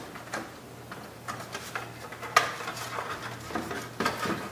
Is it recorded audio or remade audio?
recorded